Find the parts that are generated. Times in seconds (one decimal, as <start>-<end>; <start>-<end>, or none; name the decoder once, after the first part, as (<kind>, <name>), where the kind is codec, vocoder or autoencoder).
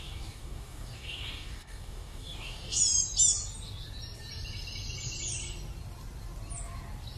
0.0-2.8 (codec, DAC)